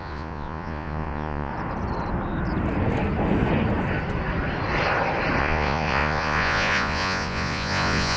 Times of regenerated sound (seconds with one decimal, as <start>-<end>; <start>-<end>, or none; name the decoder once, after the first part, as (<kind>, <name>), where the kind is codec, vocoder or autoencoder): 0.0-1.5 (vocoder, Vocos); 5.4-8.2

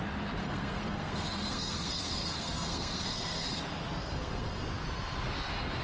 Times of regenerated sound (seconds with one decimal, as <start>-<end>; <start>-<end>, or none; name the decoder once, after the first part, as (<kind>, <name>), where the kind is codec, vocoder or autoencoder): 0.4-3.6 (codec, SNAC); 4.0-4.6

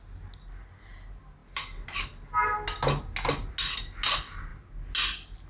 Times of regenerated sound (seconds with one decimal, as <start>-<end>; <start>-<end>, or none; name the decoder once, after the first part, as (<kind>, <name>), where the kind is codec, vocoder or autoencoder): none

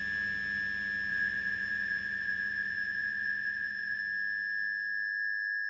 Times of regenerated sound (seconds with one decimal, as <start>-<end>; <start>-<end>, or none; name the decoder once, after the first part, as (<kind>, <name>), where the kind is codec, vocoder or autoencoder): 1.1-4.0 (vocoder, Vocos)